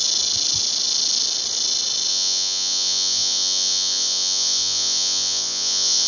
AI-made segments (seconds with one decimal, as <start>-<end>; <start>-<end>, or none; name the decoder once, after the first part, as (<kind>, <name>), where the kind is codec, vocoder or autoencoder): 2.1-6.1 (vocoder, Vocos)